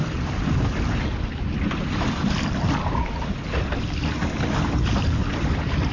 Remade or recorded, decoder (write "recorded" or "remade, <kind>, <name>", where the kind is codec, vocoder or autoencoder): recorded